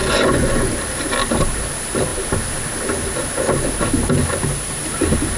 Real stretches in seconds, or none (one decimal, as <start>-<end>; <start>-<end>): 0.7-5.4